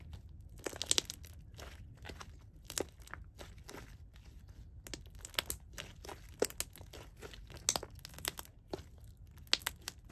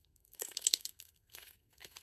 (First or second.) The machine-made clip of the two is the second